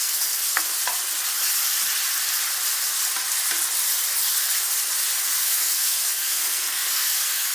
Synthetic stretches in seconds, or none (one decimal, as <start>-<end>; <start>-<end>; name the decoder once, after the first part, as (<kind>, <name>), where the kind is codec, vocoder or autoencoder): 0.0-0.7 (codec, SNAC); 5.2-7.5